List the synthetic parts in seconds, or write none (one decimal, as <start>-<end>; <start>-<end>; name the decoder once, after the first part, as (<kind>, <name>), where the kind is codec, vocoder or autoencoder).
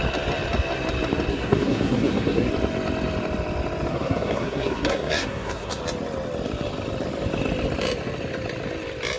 1.3-2.5 (codec, SNAC); 3.9-5.8